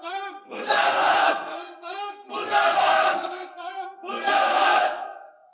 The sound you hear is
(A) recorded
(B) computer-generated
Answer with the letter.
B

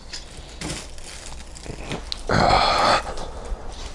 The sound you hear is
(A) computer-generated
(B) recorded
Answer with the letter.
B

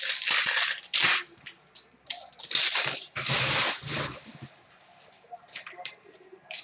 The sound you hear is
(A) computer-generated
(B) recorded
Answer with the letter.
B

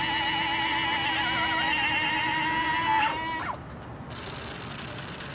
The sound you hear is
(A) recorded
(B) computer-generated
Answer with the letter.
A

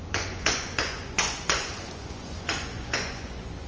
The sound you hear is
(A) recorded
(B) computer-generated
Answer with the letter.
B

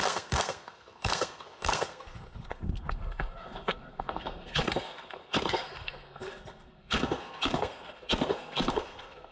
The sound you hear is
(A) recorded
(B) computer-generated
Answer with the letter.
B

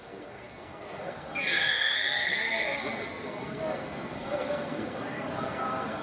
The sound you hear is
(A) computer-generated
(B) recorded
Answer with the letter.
A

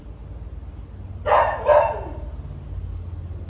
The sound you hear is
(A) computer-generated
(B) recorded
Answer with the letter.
B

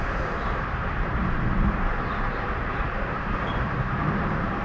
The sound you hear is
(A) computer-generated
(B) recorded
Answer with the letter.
A